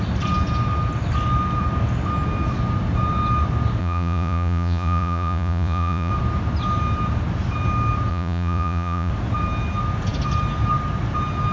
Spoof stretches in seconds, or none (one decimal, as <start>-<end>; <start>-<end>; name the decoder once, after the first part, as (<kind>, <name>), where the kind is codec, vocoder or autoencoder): 3.8-6.1 (vocoder, Vocos); 8.1-9.1